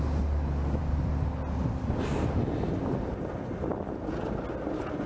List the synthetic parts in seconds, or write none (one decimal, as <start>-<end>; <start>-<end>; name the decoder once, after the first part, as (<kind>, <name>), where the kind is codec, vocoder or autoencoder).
none